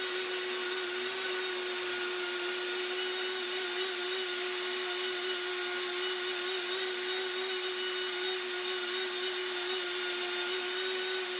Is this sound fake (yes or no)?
no